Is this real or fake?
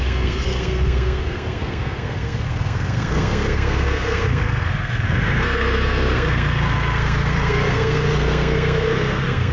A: fake